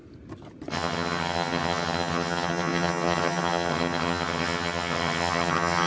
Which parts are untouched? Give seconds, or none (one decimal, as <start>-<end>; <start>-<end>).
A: 0.0-0.7